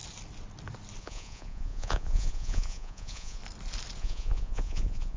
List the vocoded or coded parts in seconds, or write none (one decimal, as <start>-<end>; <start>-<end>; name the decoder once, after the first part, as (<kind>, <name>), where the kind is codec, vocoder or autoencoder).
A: 1.0-3.4 (vocoder, Vocos); 4.0-5.2